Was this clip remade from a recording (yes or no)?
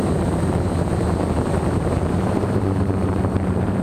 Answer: yes